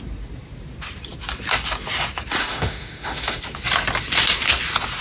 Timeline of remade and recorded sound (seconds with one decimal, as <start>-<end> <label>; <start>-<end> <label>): 0.0-2.4 recorded; 2.4-3.4 remade; 3.4-5.0 recorded